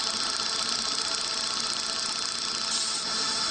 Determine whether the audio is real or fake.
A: real